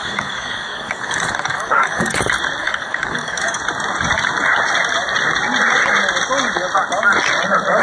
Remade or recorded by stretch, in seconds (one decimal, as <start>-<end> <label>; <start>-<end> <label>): 0.0-2.2 remade; 2.2-2.6 recorded; 2.6-3.6 remade; 3.6-7.8 recorded